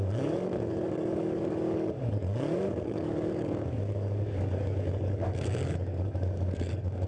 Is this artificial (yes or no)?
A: yes